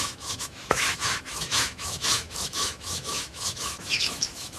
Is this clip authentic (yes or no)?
no